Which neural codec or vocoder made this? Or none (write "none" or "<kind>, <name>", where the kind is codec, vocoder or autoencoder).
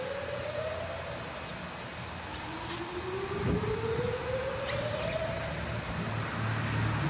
none